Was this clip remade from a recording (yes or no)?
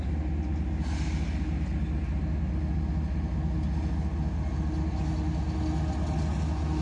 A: no